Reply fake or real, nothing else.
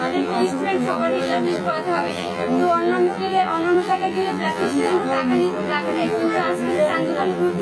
fake